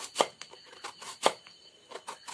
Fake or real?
real